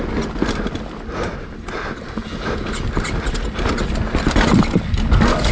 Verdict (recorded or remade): recorded